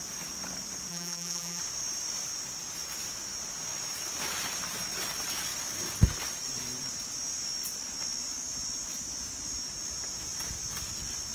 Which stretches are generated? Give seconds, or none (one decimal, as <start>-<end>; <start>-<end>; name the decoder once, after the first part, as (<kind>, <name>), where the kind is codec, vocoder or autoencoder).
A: 0.9-1.6 (vocoder, BigVGAN v2)